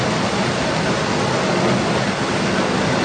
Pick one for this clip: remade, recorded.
recorded